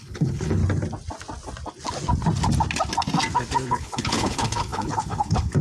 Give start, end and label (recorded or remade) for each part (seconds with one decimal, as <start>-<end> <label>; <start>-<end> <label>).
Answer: 0.0-0.6 remade; 0.6-3.7 recorded; 3.7-5.6 remade